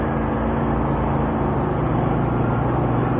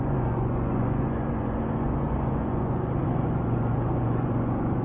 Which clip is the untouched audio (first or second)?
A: first